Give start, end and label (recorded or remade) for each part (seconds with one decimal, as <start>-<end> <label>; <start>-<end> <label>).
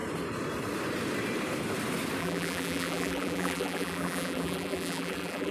0.0-2.2 recorded; 2.2-5.5 remade